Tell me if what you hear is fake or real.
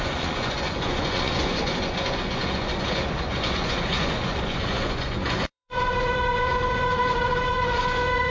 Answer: fake